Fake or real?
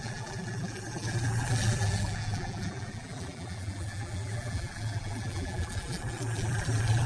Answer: fake